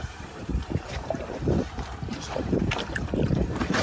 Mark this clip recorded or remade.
remade